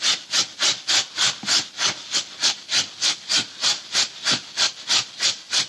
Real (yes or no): yes